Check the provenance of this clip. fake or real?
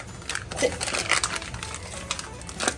real